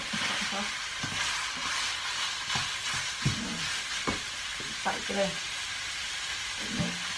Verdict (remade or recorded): recorded